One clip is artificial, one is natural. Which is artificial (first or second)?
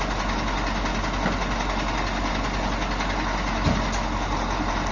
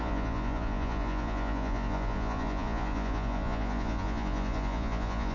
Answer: second